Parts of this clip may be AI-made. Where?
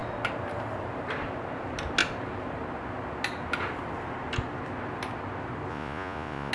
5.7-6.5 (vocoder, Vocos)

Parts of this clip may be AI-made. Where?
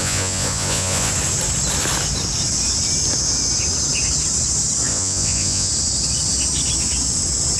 0.0-1.1 (vocoder, Vocos); 4.9-5.7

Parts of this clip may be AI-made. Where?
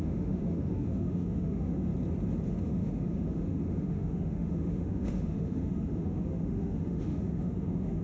0.0-1.9 (autoencoder, DAC-VAE); 2.6-8.0